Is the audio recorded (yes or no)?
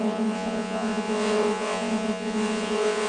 no